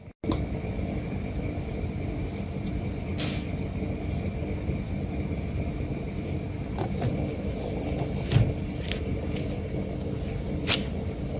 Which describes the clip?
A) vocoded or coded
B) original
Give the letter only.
B